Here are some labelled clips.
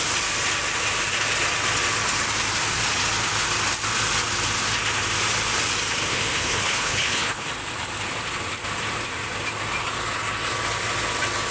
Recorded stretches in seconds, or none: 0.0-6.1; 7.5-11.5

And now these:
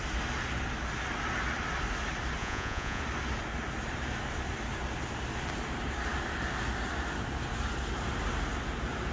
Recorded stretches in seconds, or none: 0.0-2.4; 3.0-9.1

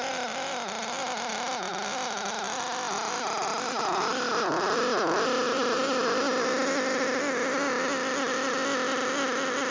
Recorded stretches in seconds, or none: 0.0-9.7

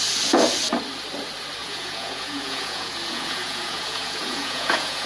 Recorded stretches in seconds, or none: 0.0-1.6

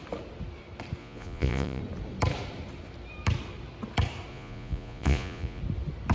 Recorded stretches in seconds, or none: 0.0-1.0; 1.8-4.3; 5.6-6.1

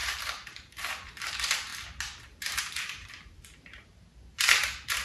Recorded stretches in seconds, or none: 1.7-2.6